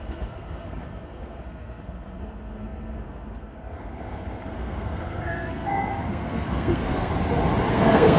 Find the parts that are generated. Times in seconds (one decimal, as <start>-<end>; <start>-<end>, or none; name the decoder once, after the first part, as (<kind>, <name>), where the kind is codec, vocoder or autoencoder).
0.0-7.1 (codec, SNAC); 7.7-8.2